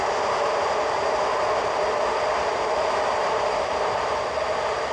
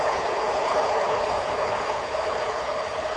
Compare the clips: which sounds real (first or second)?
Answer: first